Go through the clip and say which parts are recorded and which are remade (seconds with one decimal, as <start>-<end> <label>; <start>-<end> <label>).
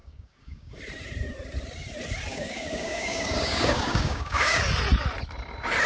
0.0-0.7 remade; 0.7-2.3 recorded; 2.3-4.6 remade; 4.6-5.9 recorded